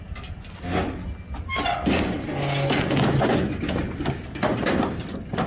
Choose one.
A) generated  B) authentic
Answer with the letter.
B